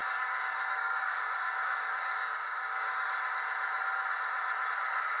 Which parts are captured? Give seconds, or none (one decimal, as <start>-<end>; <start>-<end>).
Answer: 3.1-5.2